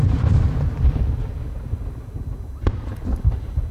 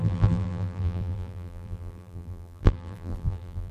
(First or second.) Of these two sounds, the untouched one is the first